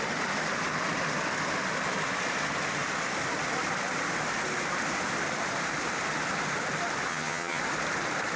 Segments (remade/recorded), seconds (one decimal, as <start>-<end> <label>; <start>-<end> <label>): 0.0-7.1 recorded; 7.1-7.6 remade; 7.6-8.4 recorded